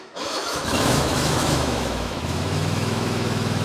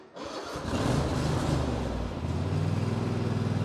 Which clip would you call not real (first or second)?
first